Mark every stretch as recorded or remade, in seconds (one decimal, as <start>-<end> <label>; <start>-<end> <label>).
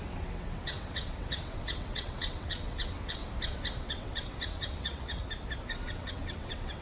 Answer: 0.0-3.2 remade; 3.2-3.8 recorded; 3.8-5.2 remade; 5.2-5.7 recorded; 5.7-6.8 remade